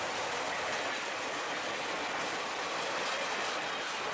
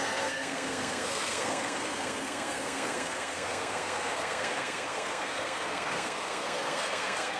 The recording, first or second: first